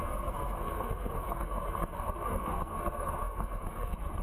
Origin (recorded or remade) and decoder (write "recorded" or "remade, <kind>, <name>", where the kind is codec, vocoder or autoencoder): remade, codec, SNAC